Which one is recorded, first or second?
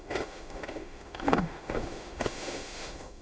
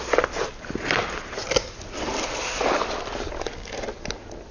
second